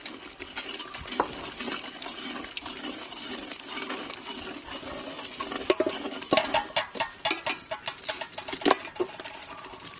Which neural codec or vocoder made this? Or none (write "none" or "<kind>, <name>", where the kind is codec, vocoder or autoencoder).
none